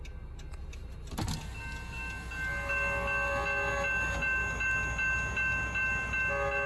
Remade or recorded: recorded